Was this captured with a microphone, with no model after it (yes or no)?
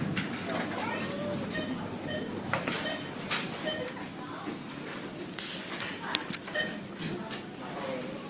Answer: yes